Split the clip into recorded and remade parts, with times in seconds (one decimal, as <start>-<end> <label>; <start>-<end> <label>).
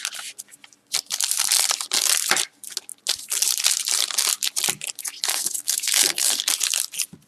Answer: 0.0-5.3 recorded; 5.3-6.4 remade; 6.4-7.3 recorded